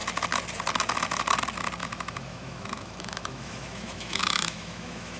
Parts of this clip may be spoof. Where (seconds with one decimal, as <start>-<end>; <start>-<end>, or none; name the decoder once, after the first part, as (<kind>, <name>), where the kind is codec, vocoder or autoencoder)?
1.8-5.2 (autoencoder, DAC-VAE)